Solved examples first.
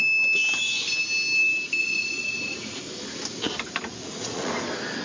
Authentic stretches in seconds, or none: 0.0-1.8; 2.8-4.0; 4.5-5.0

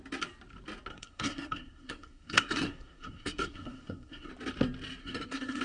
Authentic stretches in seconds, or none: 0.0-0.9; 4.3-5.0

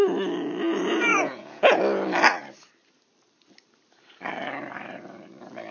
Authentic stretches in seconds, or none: 0.0-1.1; 1.8-5.7

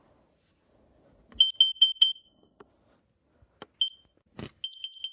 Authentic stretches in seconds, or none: 0.0-1.7; 2.7-5.1

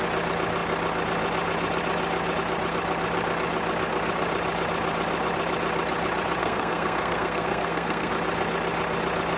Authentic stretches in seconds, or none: 0.0-6.4; 8.1-9.4

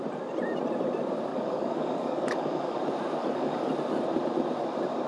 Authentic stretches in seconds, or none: 0.0-1.3; 2.8-3.2; 3.7-5.1